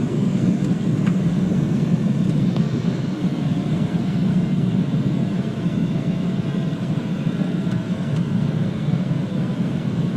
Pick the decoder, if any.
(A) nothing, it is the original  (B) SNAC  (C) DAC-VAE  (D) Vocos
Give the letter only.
B